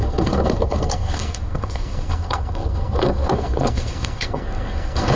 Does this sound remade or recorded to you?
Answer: remade